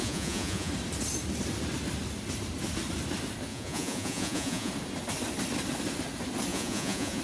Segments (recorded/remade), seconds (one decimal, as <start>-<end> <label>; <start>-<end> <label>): 0.0-0.7 remade; 0.7-3.5 recorded; 3.5-4.7 remade; 4.7-6.5 recorded; 6.5-7.2 remade